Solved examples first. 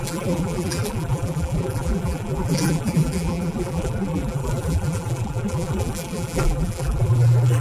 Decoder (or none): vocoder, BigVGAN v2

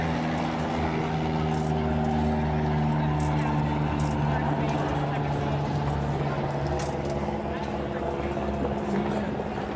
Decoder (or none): none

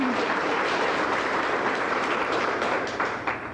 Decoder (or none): vocoder, BigVGAN v2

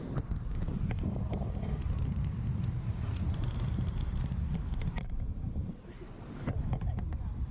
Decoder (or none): vocoder, BigVGAN v2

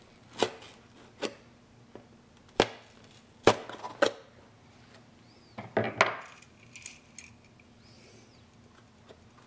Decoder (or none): none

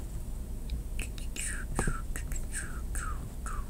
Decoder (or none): none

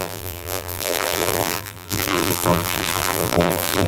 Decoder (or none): vocoder, BigVGAN v2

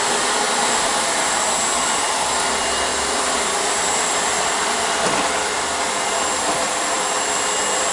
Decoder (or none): vocoder, BigVGAN v2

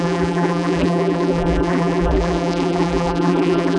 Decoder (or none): vocoder, BigVGAN v2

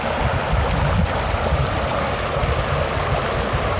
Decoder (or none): none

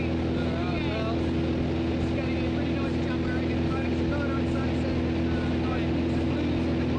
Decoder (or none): none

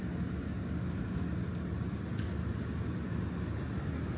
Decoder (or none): none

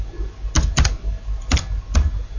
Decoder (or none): none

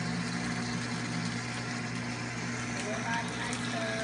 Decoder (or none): none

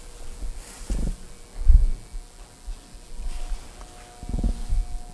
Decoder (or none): none